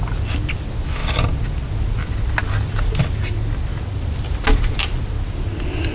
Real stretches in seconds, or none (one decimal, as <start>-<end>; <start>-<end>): 0.0-5.9